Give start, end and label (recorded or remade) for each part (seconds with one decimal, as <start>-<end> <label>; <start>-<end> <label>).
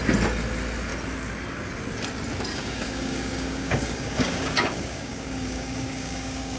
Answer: 0.0-2.5 recorded; 2.5-6.6 remade